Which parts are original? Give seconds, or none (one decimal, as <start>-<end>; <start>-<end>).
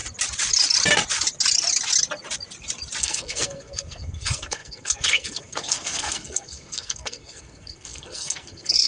0.0-3.0